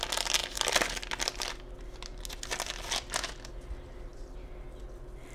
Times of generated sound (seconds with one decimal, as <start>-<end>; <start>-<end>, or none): none